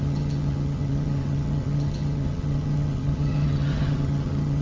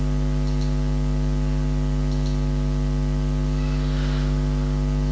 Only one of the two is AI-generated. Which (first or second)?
first